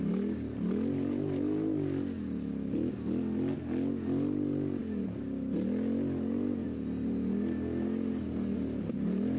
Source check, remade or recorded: recorded